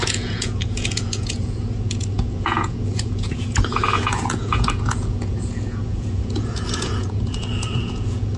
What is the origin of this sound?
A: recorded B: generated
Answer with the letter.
B